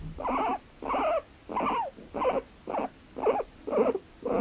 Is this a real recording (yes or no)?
yes